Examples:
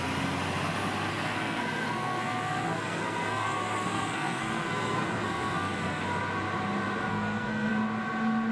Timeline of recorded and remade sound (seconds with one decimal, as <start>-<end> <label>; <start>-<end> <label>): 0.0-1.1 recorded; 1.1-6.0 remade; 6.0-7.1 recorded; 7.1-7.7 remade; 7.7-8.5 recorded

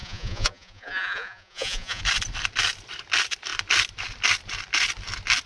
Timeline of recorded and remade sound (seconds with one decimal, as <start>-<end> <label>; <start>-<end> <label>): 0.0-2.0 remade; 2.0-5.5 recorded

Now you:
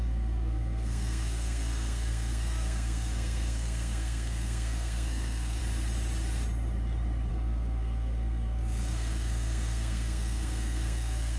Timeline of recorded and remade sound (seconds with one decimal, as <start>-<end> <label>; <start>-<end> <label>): 0.0-5.6 remade; 5.6-7.3 recorded; 7.3-11.4 remade